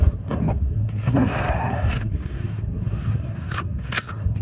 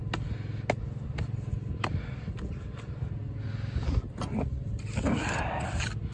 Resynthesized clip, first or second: first